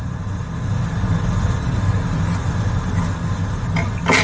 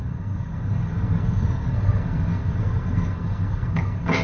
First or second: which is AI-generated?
second